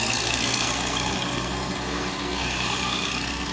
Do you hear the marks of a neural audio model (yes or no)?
yes